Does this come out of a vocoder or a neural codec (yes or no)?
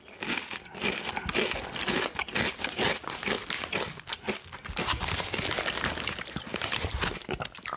no